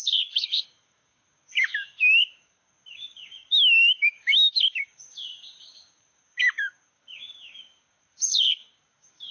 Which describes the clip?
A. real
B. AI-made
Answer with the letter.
B